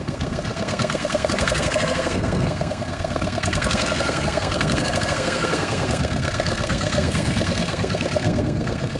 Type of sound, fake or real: fake